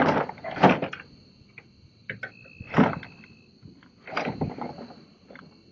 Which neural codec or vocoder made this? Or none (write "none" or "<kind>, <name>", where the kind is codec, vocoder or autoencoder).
none